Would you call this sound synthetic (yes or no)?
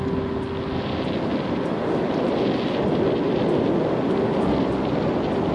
no